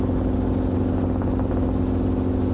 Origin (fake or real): real